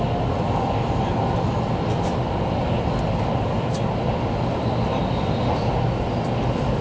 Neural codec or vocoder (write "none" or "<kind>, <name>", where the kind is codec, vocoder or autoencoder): none